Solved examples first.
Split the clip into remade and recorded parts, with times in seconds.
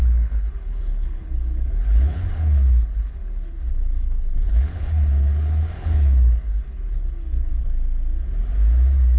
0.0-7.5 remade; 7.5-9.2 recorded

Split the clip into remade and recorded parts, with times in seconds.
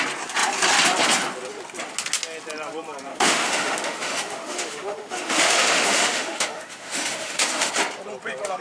0.0-3.1 recorded; 3.1-7.7 remade; 7.7-8.6 recorded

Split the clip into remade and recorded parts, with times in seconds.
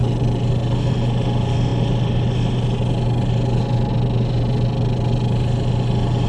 0.0-6.3 recorded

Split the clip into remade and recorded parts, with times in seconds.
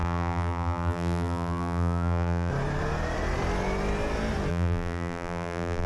0.0-2.5 remade; 2.5-4.5 recorded; 4.5-5.9 remade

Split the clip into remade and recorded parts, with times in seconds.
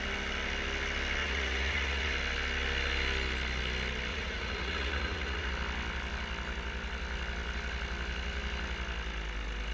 0.0-1.2 recorded; 1.2-2.1 remade; 2.1-4.1 recorded; 4.1-5.5 remade; 5.5-9.7 recorded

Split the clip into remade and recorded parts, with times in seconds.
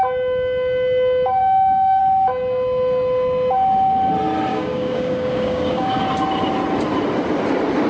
0.0-1.4 recorded; 1.4-2.0 remade; 2.0-4.5 recorded; 4.5-6.0 remade; 6.0-7.9 recorded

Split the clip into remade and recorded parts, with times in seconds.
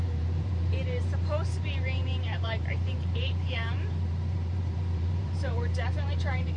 0.0-6.6 remade